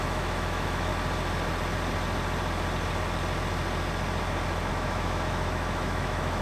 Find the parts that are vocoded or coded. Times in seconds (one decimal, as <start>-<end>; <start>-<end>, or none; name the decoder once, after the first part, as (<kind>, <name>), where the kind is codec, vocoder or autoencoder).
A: 0.0-0.9 (autoencoder, DAC-VAE); 4.7-6.4